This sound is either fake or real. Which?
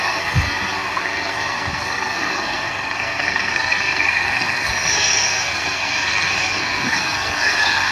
fake